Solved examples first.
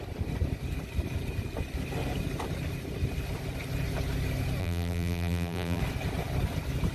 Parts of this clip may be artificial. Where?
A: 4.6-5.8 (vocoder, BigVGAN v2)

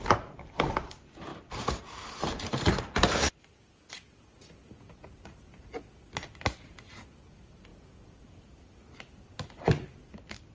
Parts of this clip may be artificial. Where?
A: none

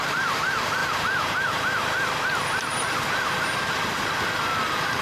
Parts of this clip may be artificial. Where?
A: none

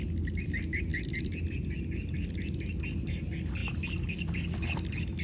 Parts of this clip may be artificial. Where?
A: none

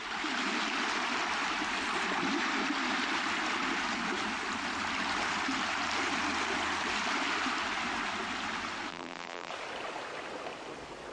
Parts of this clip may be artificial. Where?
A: 8.9-9.5 (vocoder, BigVGAN v2)

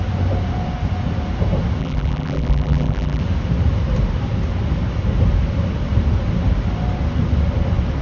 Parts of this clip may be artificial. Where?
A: 1.8-3.2 (vocoder, BigVGAN v2)

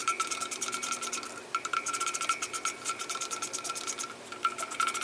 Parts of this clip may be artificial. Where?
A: 0.0-0.9 (vocoder, BigVGAN v2)